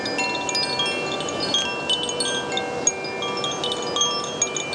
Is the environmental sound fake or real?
real